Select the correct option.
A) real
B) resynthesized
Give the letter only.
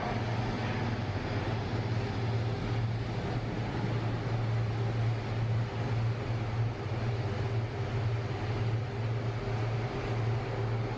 A